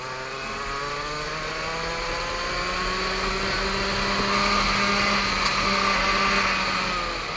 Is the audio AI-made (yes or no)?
no